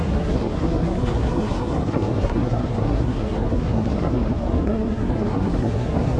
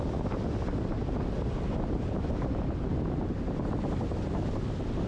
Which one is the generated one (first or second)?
first